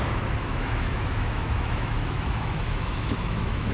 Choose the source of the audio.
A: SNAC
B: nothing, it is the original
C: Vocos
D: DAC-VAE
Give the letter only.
D